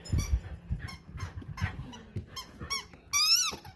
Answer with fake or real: real